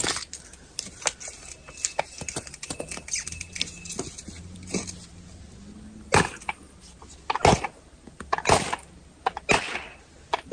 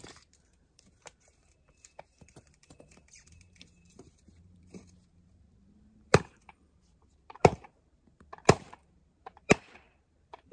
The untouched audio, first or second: first